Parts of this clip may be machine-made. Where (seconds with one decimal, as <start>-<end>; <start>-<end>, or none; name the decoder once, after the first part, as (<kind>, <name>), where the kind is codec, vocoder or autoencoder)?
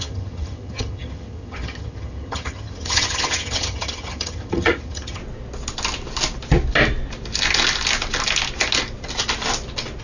0.0-5.2 (vocoder, HiFi-GAN)